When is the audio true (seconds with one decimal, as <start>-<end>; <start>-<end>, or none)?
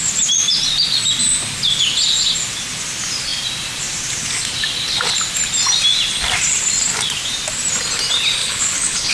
0.0-8.4